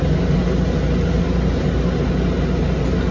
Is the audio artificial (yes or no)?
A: no